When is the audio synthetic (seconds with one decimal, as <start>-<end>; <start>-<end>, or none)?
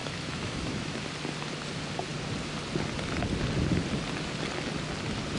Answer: 0.0-1.0